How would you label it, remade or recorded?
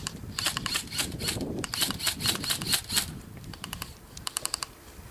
remade